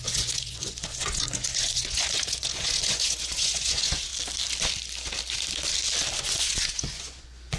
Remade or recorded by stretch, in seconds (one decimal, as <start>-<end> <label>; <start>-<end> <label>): 0.0-4.1 remade; 4.1-6.2 recorded; 6.2-7.6 remade